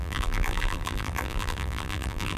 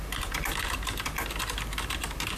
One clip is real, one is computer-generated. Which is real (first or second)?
second